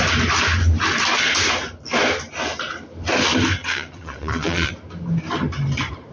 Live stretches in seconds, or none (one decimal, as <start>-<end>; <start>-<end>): 0.0-3.6; 4.7-6.1